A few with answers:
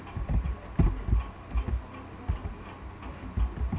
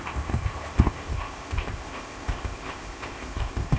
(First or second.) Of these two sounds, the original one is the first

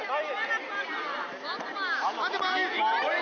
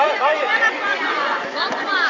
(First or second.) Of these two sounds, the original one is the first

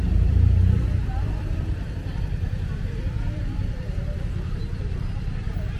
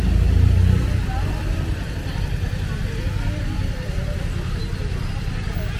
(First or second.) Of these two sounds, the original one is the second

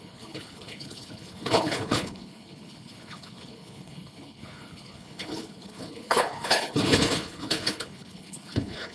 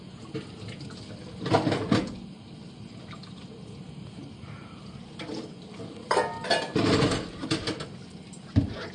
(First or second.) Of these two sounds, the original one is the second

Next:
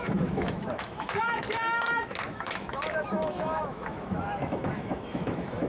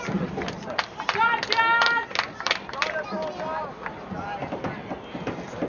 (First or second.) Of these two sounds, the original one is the second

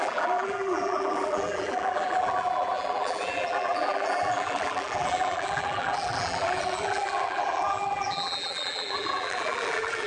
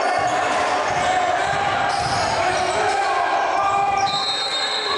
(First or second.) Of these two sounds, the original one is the second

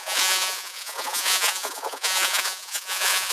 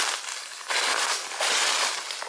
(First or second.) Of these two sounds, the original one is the second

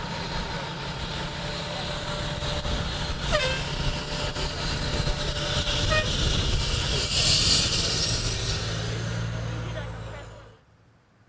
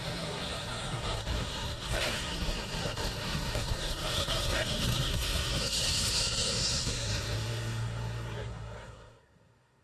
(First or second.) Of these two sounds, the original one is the first